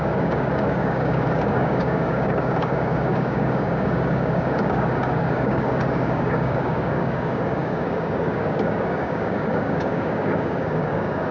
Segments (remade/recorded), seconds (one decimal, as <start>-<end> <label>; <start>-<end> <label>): 0.0-11.3 remade